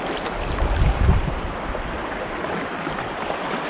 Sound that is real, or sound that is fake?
real